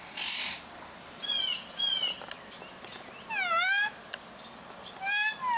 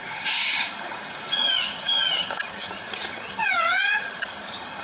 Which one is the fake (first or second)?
second